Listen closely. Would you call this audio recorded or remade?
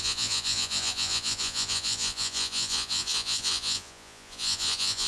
remade